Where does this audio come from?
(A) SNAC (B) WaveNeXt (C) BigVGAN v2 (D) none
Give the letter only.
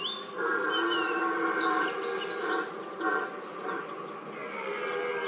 D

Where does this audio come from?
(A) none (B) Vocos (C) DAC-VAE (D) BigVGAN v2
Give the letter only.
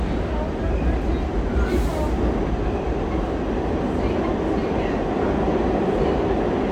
A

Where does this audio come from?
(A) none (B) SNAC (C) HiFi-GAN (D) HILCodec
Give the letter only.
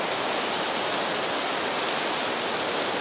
A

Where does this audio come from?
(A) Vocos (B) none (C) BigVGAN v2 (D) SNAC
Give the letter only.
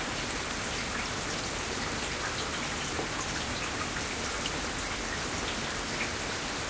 B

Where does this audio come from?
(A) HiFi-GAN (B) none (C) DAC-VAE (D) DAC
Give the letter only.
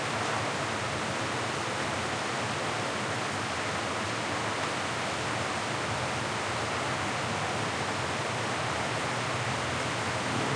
B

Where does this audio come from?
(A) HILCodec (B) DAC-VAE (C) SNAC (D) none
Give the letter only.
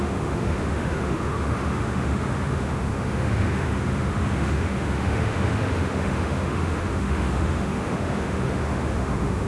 B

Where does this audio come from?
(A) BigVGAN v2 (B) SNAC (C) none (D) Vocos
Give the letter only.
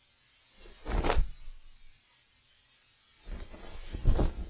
C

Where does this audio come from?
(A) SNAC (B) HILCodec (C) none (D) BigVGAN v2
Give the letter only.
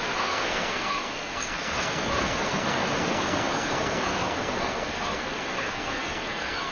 A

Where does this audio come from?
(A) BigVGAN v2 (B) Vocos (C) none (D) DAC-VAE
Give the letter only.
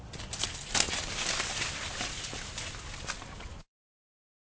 C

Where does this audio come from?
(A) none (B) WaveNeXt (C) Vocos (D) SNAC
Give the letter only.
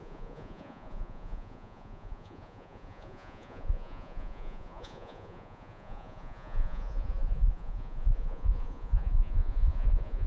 C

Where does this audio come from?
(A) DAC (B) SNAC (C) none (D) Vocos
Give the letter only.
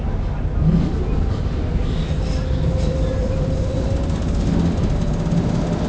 C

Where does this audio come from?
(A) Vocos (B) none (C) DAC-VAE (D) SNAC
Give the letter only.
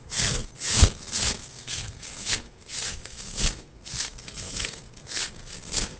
D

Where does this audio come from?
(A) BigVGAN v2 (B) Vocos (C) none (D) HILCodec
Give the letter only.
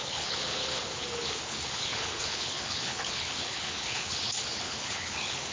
D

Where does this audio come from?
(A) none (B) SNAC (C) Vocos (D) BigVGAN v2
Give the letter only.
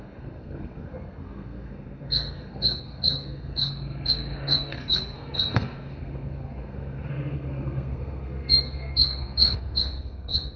B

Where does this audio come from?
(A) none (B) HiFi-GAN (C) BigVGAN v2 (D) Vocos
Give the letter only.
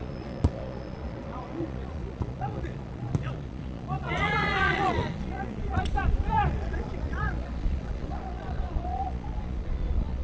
D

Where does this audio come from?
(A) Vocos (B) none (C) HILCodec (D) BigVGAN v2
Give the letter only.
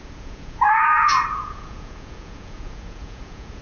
A